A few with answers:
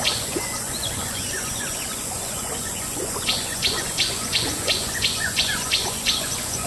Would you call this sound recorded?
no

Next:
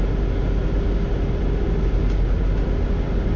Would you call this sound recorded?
yes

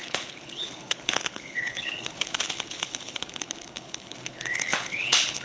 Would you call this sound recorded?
no